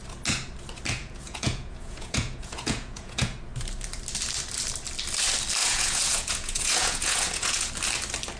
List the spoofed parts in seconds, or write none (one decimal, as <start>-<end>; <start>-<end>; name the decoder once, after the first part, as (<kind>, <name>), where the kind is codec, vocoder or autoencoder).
1.0-3.4 (vocoder, Vocos); 5.6-7.7